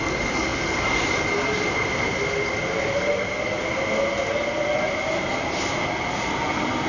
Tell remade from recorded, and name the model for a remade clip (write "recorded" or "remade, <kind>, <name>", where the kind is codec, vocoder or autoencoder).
recorded